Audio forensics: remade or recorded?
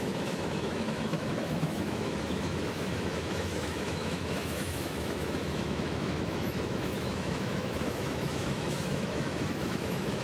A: remade